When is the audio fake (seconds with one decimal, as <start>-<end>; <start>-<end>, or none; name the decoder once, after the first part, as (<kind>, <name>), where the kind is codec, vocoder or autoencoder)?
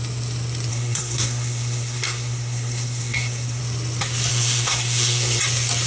0.7-3.6 (codec, SNAC); 4.3-5.4